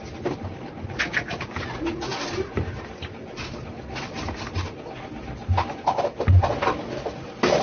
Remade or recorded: recorded